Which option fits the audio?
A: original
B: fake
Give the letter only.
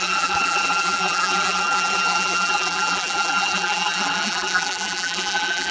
B